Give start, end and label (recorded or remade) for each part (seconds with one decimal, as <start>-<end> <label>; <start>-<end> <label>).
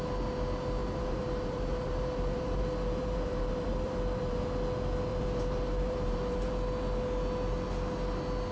0.0-0.8 recorded; 0.8-4.4 remade; 4.4-5.1 recorded; 5.1-6.5 remade; 6.5-8.5 recorded